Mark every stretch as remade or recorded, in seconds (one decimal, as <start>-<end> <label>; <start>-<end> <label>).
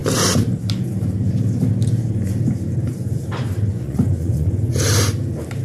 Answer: 0.0-3.7 recorded; 3.7-4.6 remade; 4.6-5.6 recorded